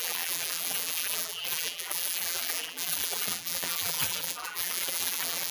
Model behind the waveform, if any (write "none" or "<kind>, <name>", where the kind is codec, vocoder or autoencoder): vocoder, BigVGAN v2